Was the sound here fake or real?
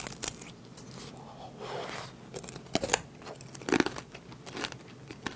real